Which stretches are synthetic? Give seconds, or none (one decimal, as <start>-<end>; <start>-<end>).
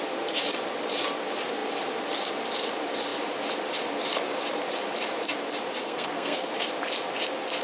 5.8-6.5